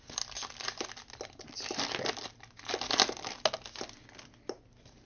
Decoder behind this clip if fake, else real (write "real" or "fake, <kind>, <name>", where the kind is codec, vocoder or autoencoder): real